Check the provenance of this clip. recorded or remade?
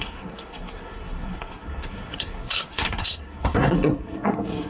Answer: remade